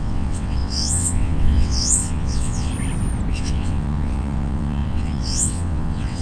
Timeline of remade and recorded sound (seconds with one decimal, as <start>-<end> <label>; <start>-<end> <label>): 0.0-2.7 remade; 2.7-3.3 recorded; 3.3-6.2 remade